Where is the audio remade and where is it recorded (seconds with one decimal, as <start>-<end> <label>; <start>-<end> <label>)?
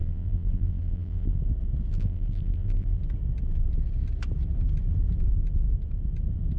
0.0-1.4 remade; 1.4-1.9 recorded; 1.9-3.0 remade; 3.0-6.6 recorded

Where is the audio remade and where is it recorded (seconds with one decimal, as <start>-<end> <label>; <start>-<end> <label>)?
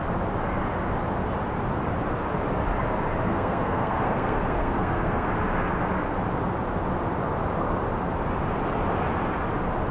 0.0-3.3 recorded; 3.3-5.3 remade; 5.3-9.9 recorded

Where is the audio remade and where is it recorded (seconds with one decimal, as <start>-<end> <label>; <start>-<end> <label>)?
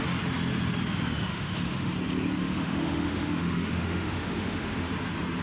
0.0-1.3 recorded; 1.3-1.9 remade; 1.9-2.4 recorded; 2.4-4.9 remade; 4.9-5.4 recorded